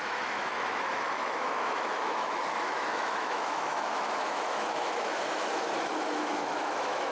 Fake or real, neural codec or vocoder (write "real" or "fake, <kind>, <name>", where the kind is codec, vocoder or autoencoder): fake, autoencoder, DAC-VAE